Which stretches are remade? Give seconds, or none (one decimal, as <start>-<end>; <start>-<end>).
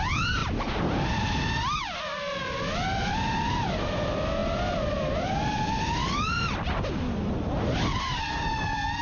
0.4-1.2; 4.4-7.5